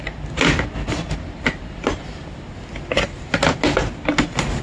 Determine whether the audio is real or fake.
real